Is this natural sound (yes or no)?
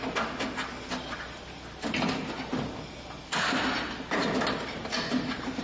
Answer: yes